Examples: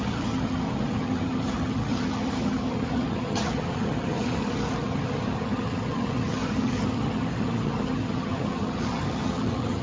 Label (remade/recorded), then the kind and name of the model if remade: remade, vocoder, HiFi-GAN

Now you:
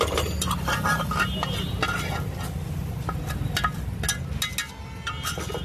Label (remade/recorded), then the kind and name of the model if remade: recorded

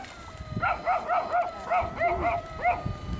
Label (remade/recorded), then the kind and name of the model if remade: recorded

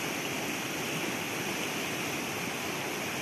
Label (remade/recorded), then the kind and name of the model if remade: recorded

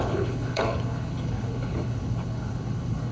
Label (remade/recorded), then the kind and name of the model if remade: remade, codec, HILCodec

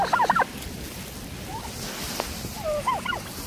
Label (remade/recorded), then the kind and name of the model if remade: recorded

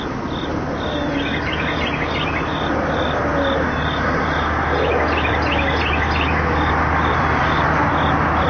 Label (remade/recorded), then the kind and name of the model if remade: recorded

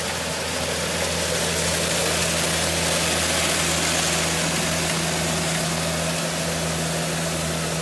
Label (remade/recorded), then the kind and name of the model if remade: recorded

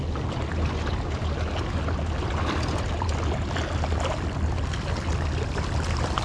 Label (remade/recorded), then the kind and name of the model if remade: recorded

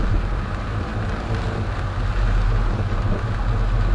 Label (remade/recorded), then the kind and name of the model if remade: recorded